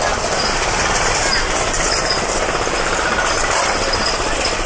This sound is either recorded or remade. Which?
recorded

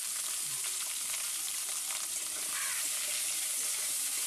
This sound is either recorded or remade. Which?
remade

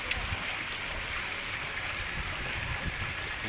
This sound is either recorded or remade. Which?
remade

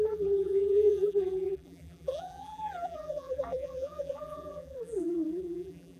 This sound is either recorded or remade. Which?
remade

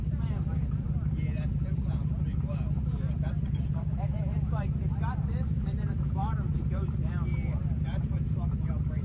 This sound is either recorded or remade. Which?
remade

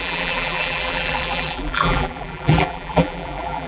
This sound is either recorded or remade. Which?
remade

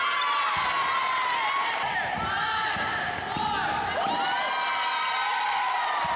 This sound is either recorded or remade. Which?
recorded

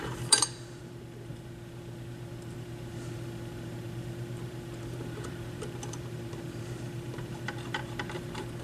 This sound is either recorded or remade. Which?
remade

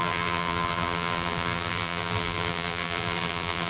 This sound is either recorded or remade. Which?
remade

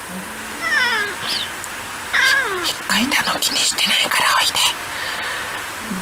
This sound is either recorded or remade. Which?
recorded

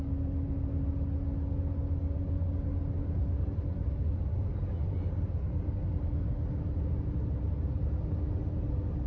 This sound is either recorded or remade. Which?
recorded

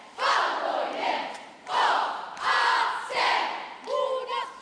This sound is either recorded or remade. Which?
recorded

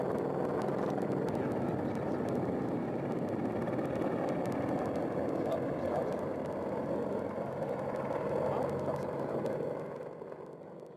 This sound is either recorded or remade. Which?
recorded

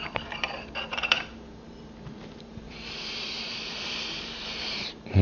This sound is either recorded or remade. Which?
remade